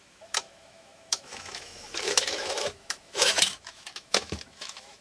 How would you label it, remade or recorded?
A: remade